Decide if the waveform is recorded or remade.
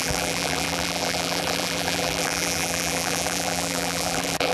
remade